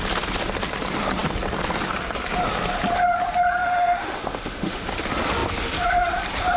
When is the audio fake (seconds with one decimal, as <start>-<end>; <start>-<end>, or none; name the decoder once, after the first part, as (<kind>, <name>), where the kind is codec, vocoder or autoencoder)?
3.6-4.9 (autoencoder, DAC-VAE)